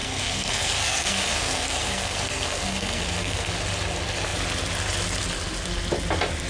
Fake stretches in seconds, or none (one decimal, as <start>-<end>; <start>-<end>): 0.0-3.5